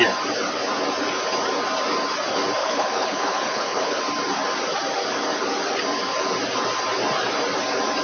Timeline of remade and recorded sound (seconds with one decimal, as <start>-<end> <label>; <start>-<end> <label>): 0.0-2.6 recorded; 2.6-4.0 remade; 4.0-8.0 recorded